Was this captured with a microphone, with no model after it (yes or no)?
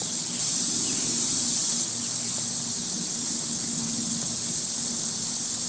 yes